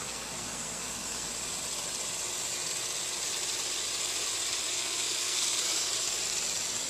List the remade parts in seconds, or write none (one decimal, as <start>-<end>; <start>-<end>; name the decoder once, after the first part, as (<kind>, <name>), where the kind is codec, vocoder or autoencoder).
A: 0.0-1.3 (codec, SNAC); 4.7-5.9